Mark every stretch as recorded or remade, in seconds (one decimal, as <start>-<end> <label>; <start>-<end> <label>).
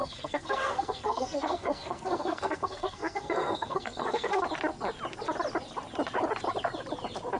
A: 0.0-4.4 remade; 4.4-7.4 recorded